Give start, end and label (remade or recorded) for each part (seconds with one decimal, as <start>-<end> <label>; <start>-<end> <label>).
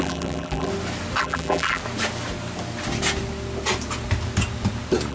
0.0-0.7 remade; 0.7-1.2 recorded; 1.2-1.8 remade; 1.8-5.1 recorded